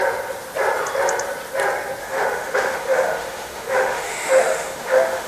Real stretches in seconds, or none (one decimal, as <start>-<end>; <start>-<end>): 0.0-2.0